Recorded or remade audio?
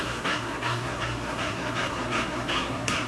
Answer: remade